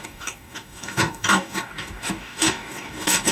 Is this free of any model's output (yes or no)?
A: no